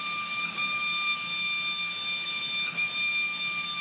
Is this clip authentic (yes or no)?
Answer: yes